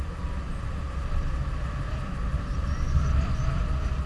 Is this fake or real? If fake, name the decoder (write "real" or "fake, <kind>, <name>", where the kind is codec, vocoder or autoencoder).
real